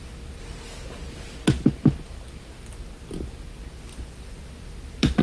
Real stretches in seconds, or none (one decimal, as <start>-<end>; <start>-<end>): 0.0-3.9; 4.4-5.2